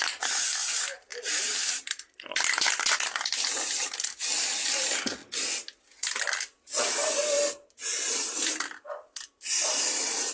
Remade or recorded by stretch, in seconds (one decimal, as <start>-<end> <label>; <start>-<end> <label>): 0.0-5.2 remade; 5.2-6.8 recorded; 6.8-10.3 remade